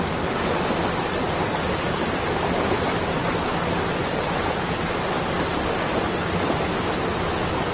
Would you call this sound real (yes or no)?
yes